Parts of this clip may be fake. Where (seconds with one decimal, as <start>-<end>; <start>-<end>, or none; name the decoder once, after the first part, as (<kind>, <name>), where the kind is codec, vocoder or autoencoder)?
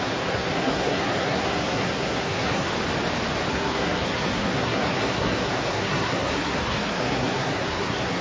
0.0-2.7 (codec, SNAC); 3.5-8.2